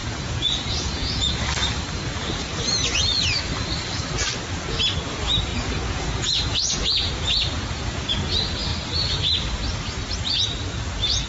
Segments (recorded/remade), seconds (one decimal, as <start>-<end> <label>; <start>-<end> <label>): 0.0-1.3 remade; 1.3-5.5 recorded; 5.5-8.1 remade; 8.1-11.3 recorded

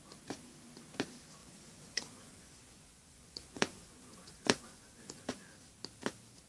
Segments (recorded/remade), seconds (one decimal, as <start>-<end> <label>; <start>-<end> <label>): 0.0-1.4 recorded; 1.4-5.3 remade; 5.3-6.5 recorded

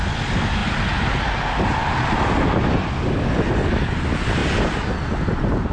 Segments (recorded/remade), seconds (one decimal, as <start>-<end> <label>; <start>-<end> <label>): 0.0-5.7 recorded

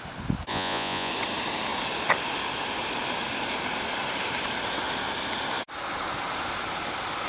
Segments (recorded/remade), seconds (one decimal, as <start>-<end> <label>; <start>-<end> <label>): 0.0-0.5 recorded; 0.5-1.1 remade; 1.1-7.3 recorded